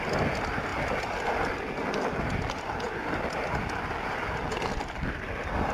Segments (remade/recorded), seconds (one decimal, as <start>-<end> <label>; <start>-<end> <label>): 0.0-5.7 recorded